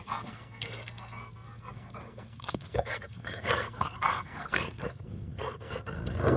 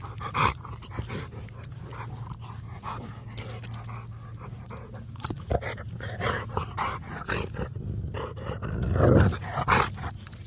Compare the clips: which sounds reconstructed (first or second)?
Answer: first